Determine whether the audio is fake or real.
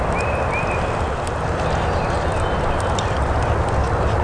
real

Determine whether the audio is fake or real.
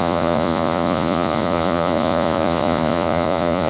fake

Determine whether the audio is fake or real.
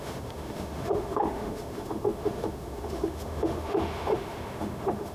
fake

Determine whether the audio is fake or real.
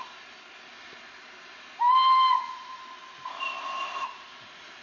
real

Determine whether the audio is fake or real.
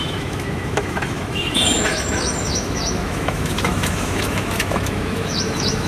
fake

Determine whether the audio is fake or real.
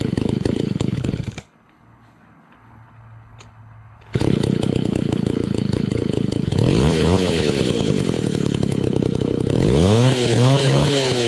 fake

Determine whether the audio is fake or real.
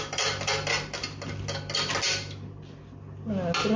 real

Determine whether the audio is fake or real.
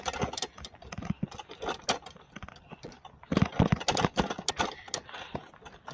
real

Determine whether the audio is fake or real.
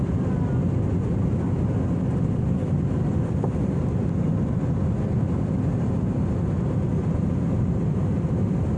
real